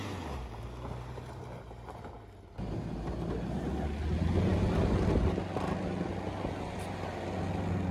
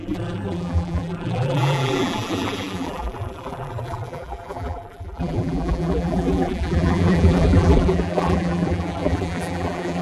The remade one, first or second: second